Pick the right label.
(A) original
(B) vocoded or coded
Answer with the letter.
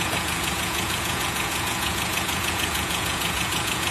B